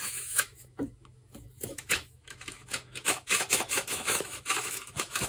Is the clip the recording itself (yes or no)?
no